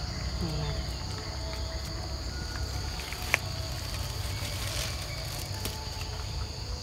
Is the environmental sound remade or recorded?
recorded